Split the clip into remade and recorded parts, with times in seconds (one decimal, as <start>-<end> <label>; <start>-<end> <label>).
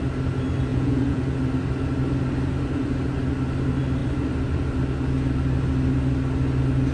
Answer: 0.0-0.7 recorded; 0.7-1.2 remade; 1.2-6.9 recorded